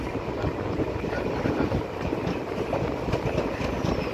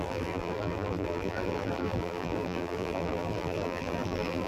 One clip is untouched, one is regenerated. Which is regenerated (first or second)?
second